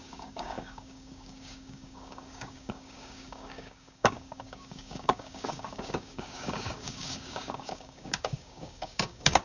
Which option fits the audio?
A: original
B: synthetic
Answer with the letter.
B